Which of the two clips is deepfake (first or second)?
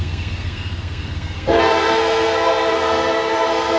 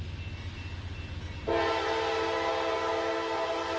first